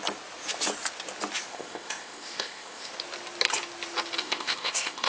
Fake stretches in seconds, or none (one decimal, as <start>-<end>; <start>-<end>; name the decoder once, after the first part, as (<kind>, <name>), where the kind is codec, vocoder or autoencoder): 1.5-2.9 (codec, ZipCodec); 4.2-5.1